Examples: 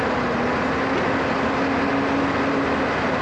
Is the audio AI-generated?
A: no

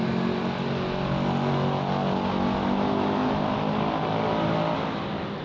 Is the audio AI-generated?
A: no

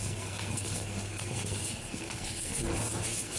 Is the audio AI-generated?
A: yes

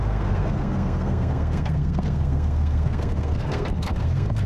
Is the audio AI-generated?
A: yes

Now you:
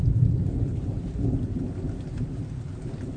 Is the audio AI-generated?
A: no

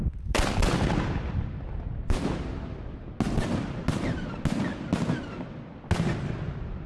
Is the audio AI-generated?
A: no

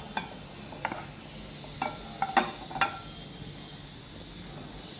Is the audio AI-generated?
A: no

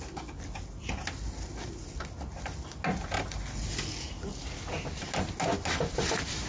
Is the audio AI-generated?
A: no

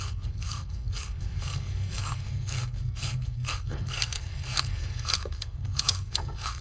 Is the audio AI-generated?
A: yes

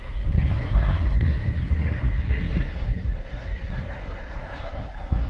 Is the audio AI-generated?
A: yes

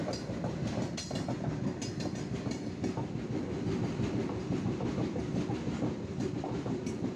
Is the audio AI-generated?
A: no